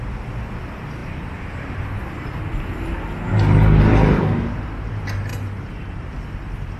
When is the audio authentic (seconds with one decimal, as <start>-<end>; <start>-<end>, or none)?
0.0-6.8

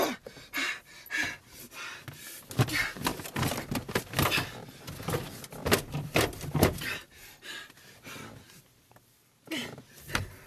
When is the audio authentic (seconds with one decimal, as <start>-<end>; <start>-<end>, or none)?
0.0-10.5

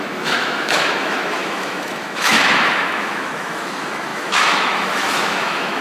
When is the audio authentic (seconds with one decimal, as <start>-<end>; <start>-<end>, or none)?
none

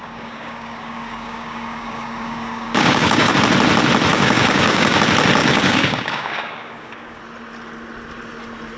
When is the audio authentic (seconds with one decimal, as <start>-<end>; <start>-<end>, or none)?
3.3-4.1; 5.0-5.4; 7.2-8.8

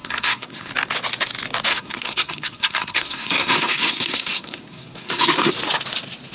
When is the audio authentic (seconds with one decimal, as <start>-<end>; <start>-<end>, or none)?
0.7-1.7; 5.5-6.3